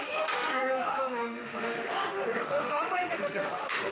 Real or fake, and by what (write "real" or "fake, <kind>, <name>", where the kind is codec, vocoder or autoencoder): fake, autoencoder, DAC-VAE